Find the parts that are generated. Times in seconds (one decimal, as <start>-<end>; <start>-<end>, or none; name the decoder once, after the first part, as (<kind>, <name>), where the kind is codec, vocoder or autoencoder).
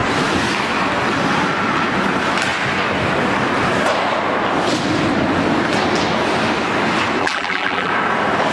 7.2-7.9 (vocoder, BigVGAN v2)